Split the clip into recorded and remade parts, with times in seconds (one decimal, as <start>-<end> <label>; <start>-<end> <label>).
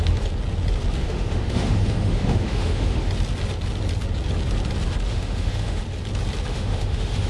0.0-1.0 recorded; 1.0-3.1 remade; 3.1-5.1 recorded; 5.1-5.8 remade; 5.8-6.5 recorded; 6.5-7.3 remade